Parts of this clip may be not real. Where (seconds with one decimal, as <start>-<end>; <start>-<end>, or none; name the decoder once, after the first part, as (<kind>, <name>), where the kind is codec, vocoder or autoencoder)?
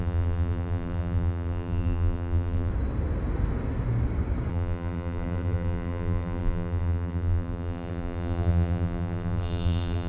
0.0-2.7 (vocoder, BigVGAN v2); 4.5-10.1